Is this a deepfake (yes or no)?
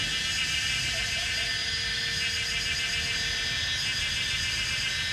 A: no